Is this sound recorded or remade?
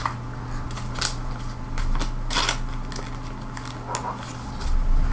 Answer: recorded